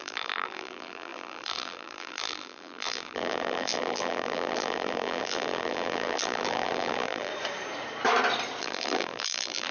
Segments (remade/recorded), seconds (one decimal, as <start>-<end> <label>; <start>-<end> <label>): 0.0-7.3 remade; 7.3-8.6 recorded; 8.6-9.7 remade